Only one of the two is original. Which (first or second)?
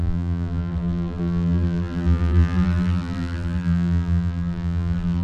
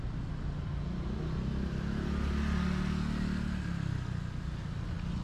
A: second